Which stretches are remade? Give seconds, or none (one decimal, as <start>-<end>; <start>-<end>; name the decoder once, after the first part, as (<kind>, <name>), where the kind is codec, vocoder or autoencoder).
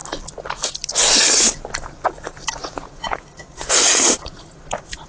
2.5-5.1 (vocoder, Vocos)